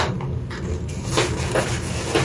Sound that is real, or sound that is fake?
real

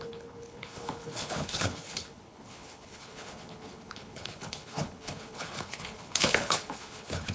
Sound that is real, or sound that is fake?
fake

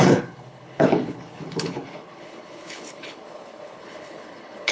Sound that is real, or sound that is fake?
fake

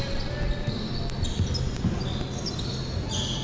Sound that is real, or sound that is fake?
real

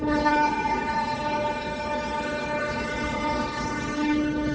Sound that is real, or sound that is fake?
fake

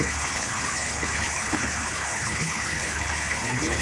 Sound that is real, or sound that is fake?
fake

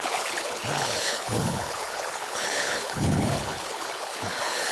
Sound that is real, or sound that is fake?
fake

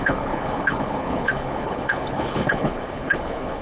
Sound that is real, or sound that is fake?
fake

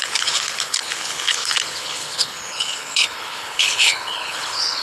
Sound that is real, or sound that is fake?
fake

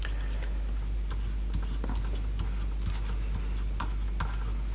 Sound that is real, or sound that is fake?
real